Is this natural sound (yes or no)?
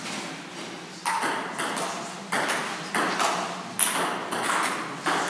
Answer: yes